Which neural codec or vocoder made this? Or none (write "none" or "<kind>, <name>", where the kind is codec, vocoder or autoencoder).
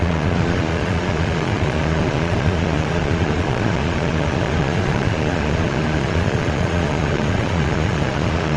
vocoder, Vocos